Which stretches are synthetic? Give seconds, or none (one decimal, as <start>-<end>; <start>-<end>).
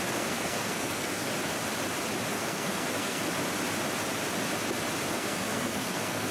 0.0-1.3; 2.3-3.2; 5.1-6.3